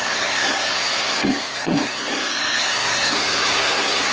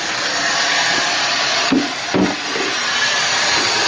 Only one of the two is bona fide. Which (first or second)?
second